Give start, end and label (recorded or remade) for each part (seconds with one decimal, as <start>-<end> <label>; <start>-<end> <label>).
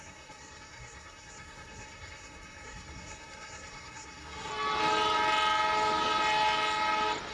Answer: 0.0-4.5 remade; 4.5-7.3 recorded